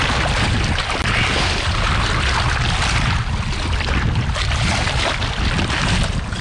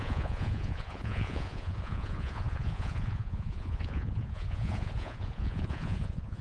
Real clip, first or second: first